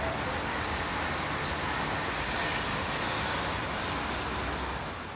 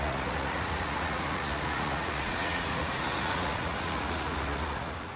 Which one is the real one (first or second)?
first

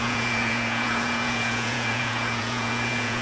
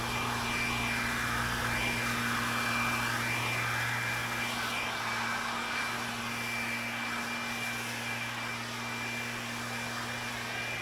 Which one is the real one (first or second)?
second